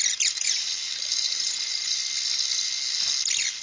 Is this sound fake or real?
real